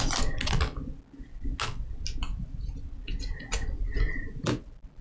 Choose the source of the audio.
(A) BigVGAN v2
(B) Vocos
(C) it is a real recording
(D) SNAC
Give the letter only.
C